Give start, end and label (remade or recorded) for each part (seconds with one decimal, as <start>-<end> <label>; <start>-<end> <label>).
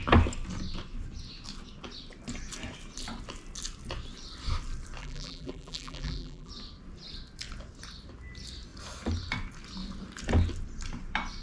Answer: 0.0-5.0 recorded; 5.0-6.5 remade; 6.5-11.4 recorded